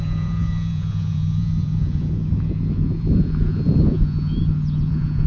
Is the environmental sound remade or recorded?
remade